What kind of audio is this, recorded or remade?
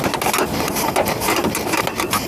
recorded